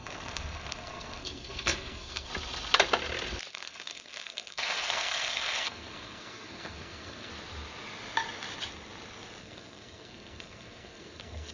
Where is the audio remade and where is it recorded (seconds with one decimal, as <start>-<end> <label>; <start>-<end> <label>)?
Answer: 0.0-2.3 remade; 2.3-3.5 recorded; 3.5-7.3 remade; 7.3-9.4 recorded; 9.4-11.5 remade